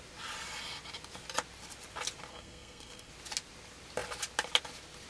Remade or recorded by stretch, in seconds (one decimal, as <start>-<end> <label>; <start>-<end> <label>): 0.0-2.3 recorded; 2.3-3.1 remade; 3.1-5.1 recorded